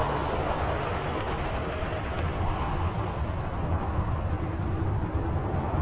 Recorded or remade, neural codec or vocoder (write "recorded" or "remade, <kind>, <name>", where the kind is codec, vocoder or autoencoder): recorded